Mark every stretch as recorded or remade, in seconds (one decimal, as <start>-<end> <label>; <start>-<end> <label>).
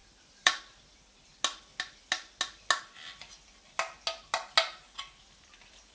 0.0-0.6 remade; 0.6-5.9 recorded